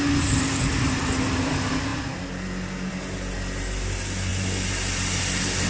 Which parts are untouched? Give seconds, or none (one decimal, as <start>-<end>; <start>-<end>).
0.0-5.7

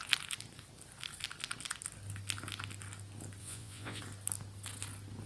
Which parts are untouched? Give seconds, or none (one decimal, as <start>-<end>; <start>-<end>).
0.0-3.4; 4.0-5.3

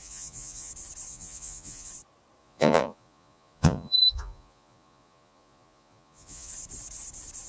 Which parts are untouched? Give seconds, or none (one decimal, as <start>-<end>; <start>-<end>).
0.7-1.1; 1.9-2.4; 6.5-7.5

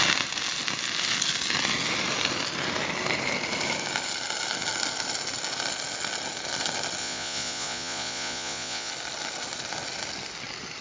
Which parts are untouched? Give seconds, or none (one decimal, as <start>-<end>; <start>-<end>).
0.0-7.0; 8.9-10.8

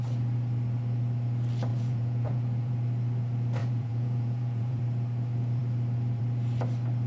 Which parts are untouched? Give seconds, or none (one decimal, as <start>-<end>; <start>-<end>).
0.0-1.7; 2.7-3.6; 4.8-7.1

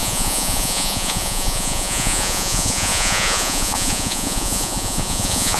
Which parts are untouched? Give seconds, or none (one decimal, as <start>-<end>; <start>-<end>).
none

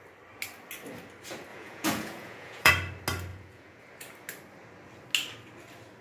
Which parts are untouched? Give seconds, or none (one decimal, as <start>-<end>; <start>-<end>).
0.0-1.5; 2.7-3.3; 3.8-6.0

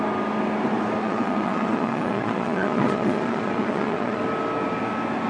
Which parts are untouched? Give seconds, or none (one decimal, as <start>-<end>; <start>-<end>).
0.0-1.0; 4.2-5.3